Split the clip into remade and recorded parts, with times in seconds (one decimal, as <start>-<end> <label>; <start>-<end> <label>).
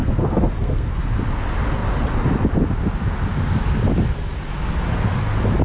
0.0-1.0 remade; 1.0-5.6 recorded